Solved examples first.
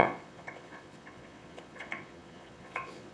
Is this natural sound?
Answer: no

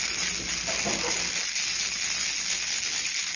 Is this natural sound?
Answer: yes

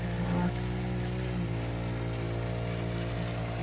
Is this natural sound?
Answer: yes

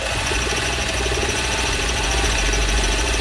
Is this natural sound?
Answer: no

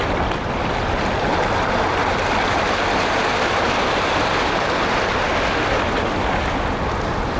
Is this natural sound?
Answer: yes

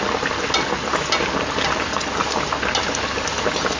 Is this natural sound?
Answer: yes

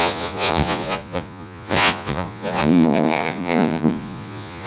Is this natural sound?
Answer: no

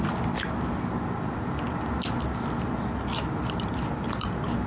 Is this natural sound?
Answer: yes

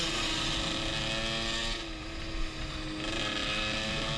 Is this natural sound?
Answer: yes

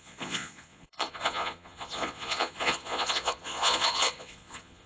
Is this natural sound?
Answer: no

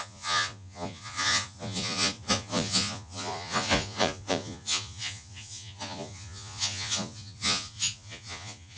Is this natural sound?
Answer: no